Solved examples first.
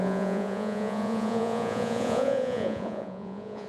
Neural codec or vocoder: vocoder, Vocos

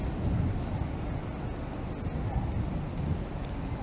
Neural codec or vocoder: none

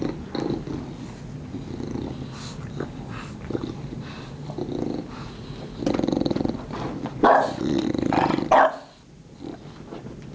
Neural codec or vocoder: none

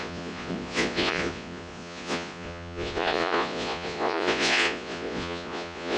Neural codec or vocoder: vocoder, Vocos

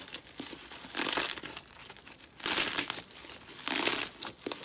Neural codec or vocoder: none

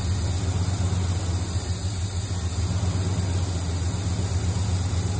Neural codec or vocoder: none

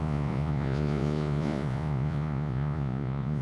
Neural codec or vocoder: vocoder, Vocos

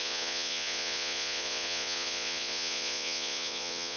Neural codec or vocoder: vocoder, Vocos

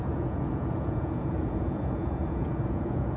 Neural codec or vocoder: vocoder, Vocos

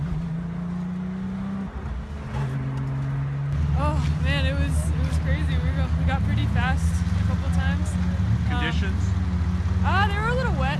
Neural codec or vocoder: none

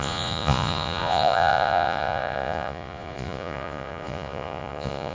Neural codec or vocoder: vocoder, Vocos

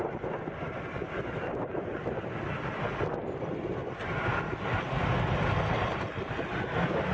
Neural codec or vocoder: none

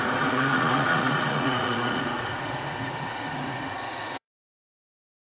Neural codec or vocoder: vocoder, Vocos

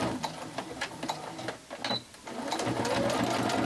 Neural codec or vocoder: none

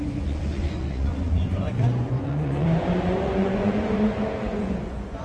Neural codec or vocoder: vocoder, Vocos